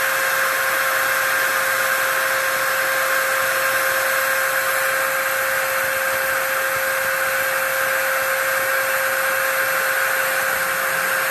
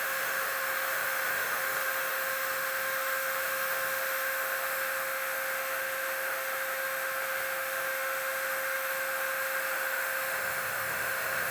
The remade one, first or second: second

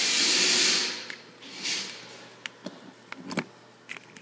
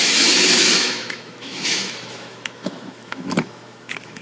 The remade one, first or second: second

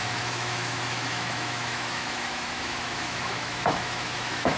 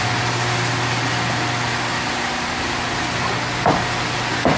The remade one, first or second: first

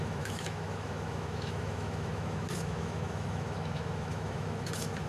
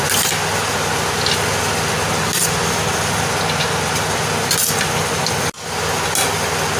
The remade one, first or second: first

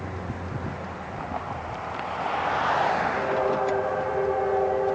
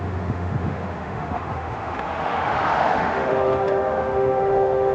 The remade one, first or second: second